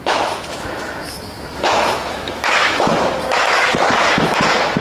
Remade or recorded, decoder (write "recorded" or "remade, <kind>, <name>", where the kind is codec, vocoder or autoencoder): remade, autoencoder, DAC-VAE